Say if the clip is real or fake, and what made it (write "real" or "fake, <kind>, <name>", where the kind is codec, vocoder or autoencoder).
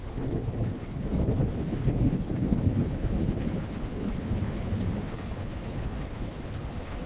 fake, codec, HILCodec